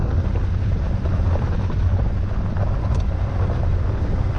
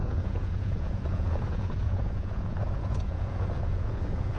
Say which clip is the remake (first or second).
second